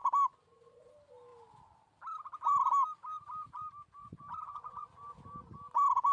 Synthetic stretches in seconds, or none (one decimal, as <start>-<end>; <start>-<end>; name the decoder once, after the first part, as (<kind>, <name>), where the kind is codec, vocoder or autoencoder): 4.0-4.8 (vocoder, Vocos)